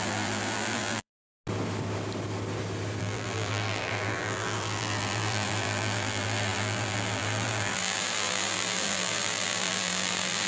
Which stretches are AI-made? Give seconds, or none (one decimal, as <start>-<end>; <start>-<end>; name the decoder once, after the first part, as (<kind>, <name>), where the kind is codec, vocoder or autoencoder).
0.0-1.1 (vocoder, BigVGAN v2); 3.0-10.5